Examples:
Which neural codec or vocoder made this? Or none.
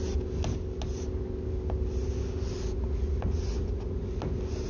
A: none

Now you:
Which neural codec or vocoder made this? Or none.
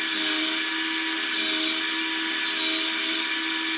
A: none